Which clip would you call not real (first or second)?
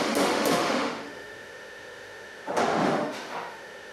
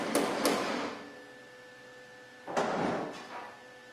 first